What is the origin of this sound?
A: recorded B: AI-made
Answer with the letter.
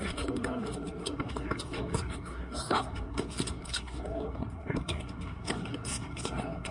B